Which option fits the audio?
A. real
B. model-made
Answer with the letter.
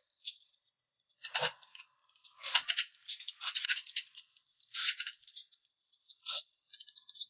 B